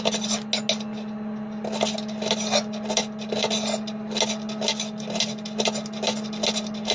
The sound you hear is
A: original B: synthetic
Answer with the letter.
A